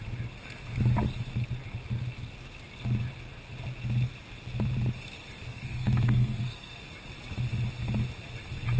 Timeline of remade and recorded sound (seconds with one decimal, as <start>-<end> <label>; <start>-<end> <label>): 0.0-5.5 recorded; 5.5-6.8 remade; 6.8-8.8 recorded